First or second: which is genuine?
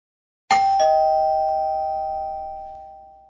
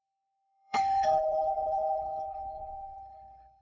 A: first